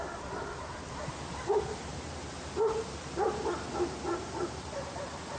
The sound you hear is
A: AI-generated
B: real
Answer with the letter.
B